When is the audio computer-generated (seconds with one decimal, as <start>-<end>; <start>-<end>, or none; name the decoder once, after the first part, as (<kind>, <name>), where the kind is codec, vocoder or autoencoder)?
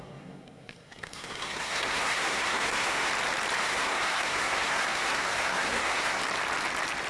0.0-3.1 (codec, SNAC); 3.6-6.2